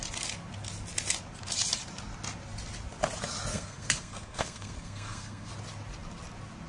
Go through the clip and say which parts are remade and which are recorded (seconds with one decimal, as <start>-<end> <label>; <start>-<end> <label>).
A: 0.0-3.5 recorded; 3.5-5.5 remade; 5.5-6.7 recorded